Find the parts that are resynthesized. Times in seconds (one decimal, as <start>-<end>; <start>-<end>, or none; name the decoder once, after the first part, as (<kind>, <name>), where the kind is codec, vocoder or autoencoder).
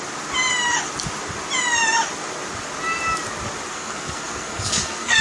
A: 3.7-5.2 (codec, SNAC)